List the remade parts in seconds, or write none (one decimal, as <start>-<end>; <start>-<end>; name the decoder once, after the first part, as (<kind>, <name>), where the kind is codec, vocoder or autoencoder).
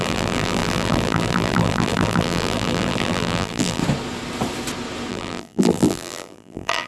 0.0-3.8 (vocoder, BigVGAN v2); 5.1-6.9